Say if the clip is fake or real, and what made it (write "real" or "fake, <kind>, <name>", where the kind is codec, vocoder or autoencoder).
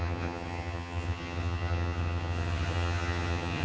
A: fake, vocoder, HiFi-GAN